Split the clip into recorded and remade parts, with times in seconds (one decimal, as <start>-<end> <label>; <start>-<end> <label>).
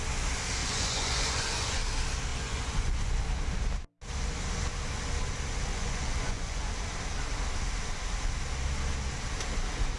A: 0.0-0.6 recorded; 0.6-1.8 remade; 1.8-2.3 recorded; 2.3-3.2 remade; 3.2-5.7 recorded; 5.7-6.7 remade; 6.7-10.0 recorded